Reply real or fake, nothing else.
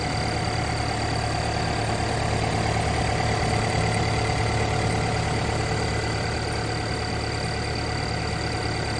real